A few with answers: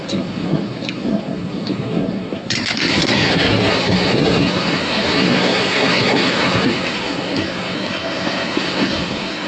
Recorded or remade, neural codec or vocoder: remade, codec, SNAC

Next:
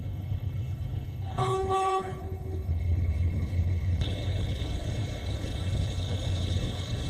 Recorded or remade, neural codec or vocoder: remade, codec, HILCodec